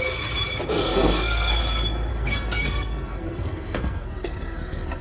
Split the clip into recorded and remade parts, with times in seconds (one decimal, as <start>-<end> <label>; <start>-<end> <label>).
0.0-0.8 recorded; 0.8-1.6 remade; 1.6-2.1 recorded; 2.1-5.0 remade